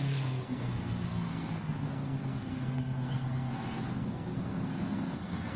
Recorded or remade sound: remade